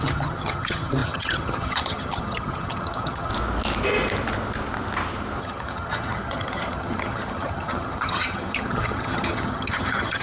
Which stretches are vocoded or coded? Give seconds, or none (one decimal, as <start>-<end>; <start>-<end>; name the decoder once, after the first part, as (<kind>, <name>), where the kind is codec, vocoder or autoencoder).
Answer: 0.0-3.3 (vocoder, HiFi-GAN); 5.4-10.2